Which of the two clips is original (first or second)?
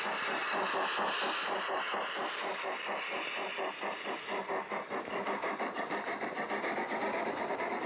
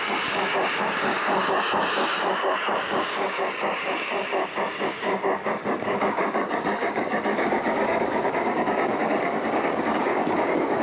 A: first